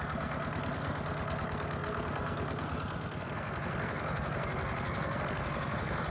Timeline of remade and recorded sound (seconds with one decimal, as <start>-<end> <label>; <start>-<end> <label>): 0.0-6.1 remade